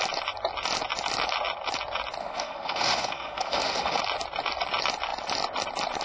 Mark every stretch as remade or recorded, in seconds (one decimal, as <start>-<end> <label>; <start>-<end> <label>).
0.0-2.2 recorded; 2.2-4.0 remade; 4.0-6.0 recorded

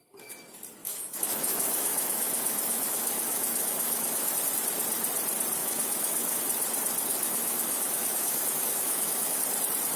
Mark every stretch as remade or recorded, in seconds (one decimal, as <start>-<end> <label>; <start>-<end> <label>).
0.0-0.8 recorded; 0.8-4.3 remade; 4.3-5.6 recorded; 5.6-6.4 remade; 6.4-7.1 recorded; 7.1-9.4 remade; 9.4-10.0 recorded

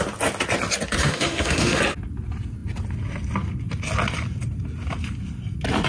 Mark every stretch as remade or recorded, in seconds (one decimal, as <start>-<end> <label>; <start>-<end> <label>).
0.0-1.0 recorded; 1.0-1.8 remade; 1.8-5.9 recorded

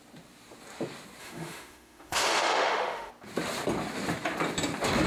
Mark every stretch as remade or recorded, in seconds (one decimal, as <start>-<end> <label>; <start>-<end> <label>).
0.0-1.2 recorded; 1.2-3.1 remade; 3.1-5.1 recorded